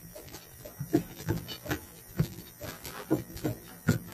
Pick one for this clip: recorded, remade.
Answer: remade